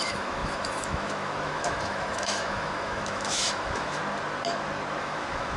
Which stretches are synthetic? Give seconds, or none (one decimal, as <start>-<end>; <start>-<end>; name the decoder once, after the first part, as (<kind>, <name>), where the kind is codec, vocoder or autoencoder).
0.0-4.0 (autoencoder, DAC-VAE); 5.0-5.6